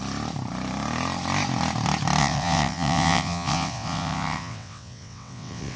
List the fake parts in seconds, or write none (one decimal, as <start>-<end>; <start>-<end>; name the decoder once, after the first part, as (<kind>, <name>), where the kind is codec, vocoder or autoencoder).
2.2-5.8 (vocoder, WaveNeXt)